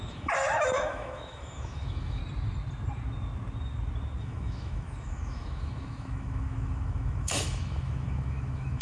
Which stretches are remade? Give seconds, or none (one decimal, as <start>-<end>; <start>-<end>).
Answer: 0.0-2.2; 4.2-8.8